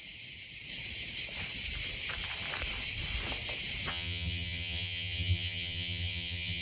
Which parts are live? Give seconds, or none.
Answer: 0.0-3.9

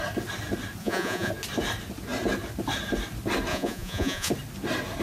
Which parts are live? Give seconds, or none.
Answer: 0.0-0.8; 1.3-3.5; 4.3-5.0

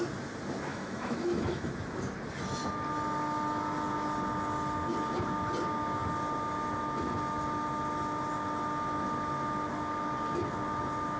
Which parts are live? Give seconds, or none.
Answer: 0.0-0.7; 1.7-11.2